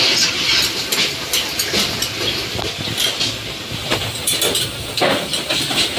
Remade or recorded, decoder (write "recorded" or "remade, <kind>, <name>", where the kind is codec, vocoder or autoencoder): recorded